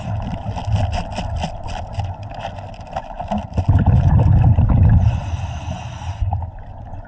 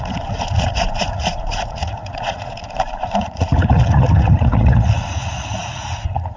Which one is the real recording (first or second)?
first